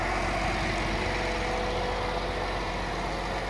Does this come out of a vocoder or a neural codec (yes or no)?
no